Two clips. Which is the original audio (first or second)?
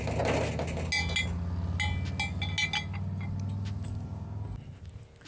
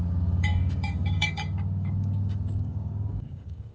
first